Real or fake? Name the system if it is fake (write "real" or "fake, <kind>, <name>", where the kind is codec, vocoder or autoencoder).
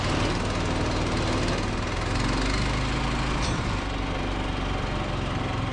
real